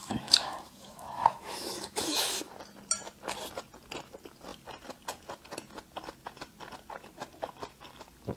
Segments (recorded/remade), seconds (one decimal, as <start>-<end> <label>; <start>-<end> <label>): 0.0-2.5 remade; 2.5-8.4 recorded